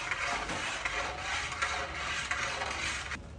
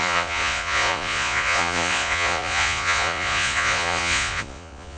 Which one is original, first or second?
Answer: first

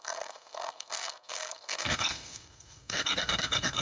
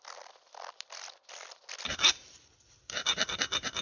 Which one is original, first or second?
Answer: second